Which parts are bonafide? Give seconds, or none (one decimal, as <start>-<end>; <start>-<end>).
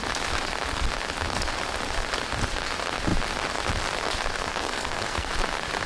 0.0-4.5; 5.3-5.9